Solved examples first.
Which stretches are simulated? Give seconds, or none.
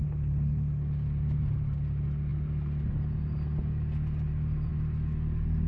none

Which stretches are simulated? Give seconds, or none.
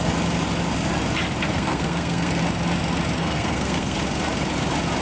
1.5-2.4 (codec, SNAC); 3.2-4.0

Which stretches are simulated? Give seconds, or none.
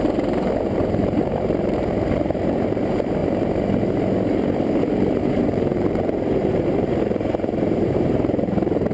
0.0-3.2 (vocoder, BigVGAN v2); 5.3-8.9